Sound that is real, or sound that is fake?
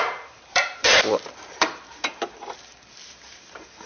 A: fake